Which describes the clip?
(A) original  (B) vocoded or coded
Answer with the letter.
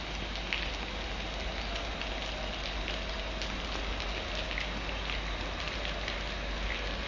A